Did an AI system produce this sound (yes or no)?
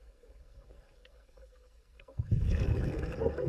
yes